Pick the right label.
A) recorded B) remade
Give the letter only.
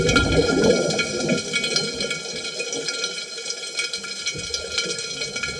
A